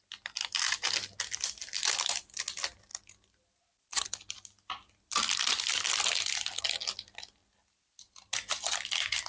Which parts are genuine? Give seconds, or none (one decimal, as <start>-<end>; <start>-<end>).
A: 0.0-1.7; 2.2-2.9; 6.6-9.3